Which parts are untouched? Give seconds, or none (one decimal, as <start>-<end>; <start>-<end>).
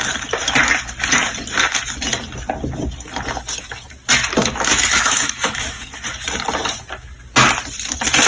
0.0-4.4; 5.9-8.3